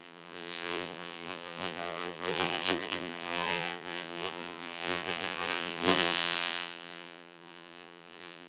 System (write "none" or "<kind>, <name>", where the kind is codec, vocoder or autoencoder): vocoder, BigVGAN v2